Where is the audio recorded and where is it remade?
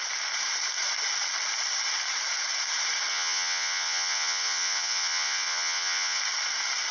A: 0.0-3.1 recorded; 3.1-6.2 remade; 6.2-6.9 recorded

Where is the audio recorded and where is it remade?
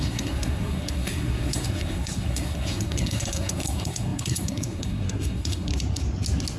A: 0.0-5.7 remade; 5.7-6.6 recorded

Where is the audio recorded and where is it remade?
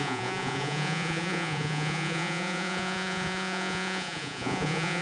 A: 0.0-5.0 remade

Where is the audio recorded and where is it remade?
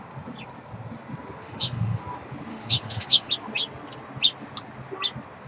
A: 0.0-1.4 recorded; 1.4-2.0 remade; 2.0-2.5 recorded; 2.5-3.3 remade; 3.3-5.5 recorded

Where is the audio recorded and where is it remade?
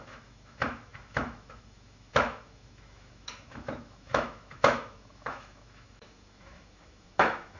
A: 0.0-7.6 remade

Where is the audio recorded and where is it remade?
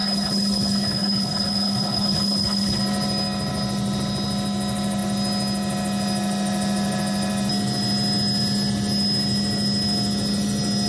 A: 0.0-2.8 remade; 2.8-10.9 recorded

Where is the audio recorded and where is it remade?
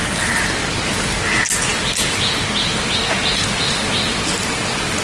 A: 0.0-5.0 recorded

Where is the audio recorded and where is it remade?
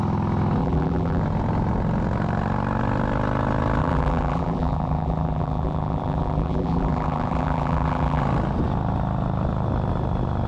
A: 0.0-0.6 recorded; 0.6-1.2 remade; 1.2-3.8 recorded; 3.8-8.2 remade; 8.2-10.5 recorded